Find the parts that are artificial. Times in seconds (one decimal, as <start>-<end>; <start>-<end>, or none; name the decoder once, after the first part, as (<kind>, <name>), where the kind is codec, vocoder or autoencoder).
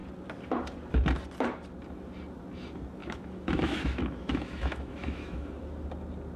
3.0-5.5 (autoencoder, DAC-VAE)